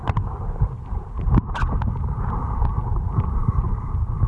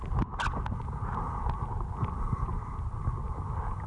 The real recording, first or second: second